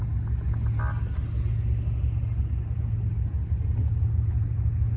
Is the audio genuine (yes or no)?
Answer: yes